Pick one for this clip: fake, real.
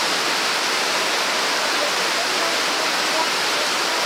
real